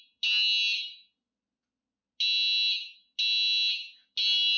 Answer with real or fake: real